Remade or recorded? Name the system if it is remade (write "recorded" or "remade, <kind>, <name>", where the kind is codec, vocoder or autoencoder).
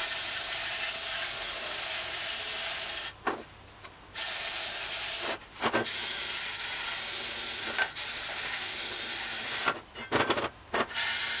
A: recorded